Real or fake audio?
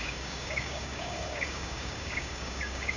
fake